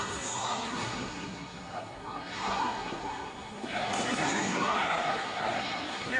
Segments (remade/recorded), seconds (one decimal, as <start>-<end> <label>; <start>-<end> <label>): 0.0-6.2 remade